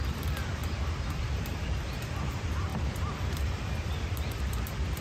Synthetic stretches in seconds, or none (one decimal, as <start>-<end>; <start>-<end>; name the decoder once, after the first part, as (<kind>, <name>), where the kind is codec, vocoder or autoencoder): 0.0-0.6 (vocoder, BigVGAN v2); 1.2-2.7; 4.4-5.0